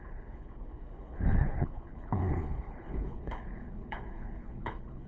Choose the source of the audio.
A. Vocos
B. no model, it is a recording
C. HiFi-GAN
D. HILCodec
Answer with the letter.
D